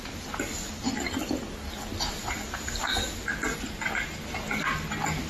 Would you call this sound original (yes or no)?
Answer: yes